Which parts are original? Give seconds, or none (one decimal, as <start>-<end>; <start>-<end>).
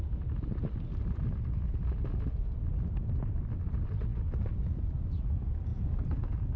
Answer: 0.0-5.7